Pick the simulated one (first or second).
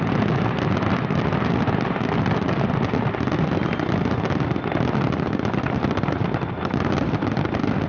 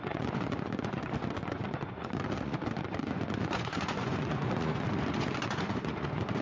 second